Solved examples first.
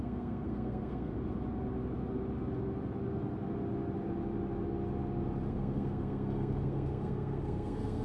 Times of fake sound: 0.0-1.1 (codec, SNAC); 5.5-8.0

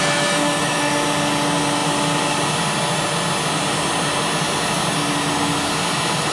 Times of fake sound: 0.0-0.9 (autoencoder, DAC-VAE)

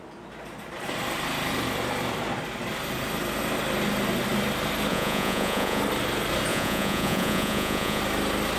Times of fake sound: 4.9-5.8 (vocoder, Vocos); 6.5-8.0

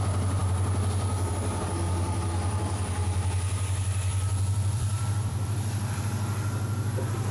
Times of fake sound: 4.1-6.0 (vocoder, BigVGAN v2)